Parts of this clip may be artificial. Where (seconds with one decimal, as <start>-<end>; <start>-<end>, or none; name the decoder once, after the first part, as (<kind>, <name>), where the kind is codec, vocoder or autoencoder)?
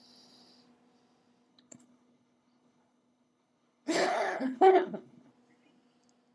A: 1.5-5.3 (codec, HILCodec)